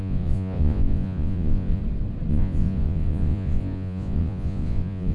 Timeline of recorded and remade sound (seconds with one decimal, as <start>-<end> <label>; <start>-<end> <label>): 0.0-1.8 remade; 1.8-2.3 recorded; 2.3-5.1 remade